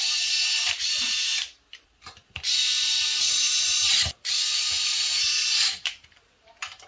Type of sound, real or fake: fake